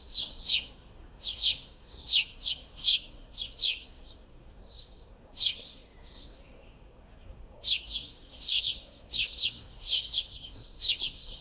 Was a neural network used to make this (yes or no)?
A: yes